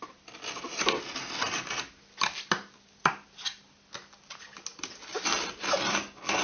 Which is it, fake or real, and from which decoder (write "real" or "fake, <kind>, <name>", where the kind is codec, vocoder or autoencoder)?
real